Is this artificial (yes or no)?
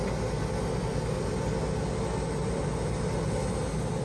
no